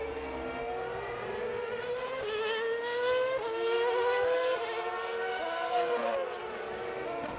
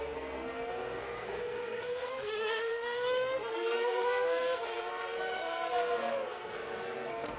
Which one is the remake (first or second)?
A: second